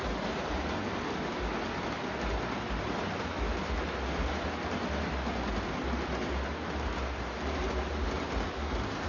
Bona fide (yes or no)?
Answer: yes